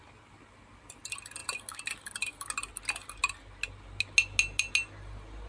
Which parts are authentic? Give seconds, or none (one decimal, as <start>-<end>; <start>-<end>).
0.0-5.5